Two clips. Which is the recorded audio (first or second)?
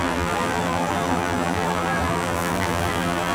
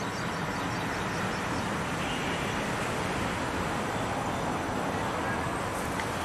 second